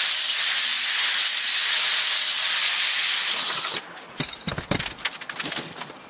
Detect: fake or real real